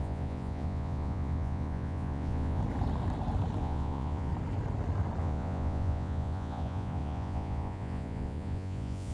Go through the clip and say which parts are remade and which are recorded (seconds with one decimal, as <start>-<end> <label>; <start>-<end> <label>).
0.0-2.6 remade; 2.6-3.6 recorded; 3.6-4.3 remade; 4.3-5.2 recorded; 5.2-9.1 remade